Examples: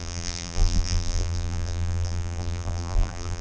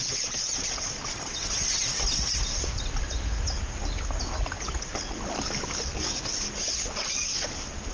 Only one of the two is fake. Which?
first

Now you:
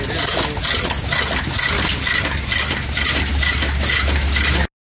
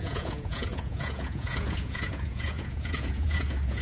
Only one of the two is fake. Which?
second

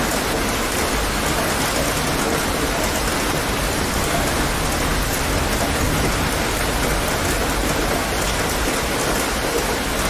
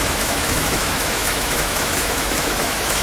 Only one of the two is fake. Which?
second